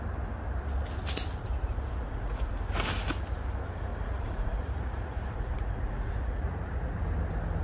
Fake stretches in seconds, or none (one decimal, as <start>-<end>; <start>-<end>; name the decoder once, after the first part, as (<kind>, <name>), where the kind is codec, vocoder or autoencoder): 1.4-2.5 (vocoder, Vocos); 3.9-7.0